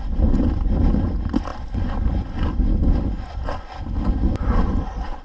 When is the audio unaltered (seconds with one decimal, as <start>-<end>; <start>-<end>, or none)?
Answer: 0.0-5.2